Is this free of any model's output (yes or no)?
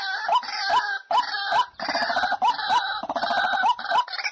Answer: yes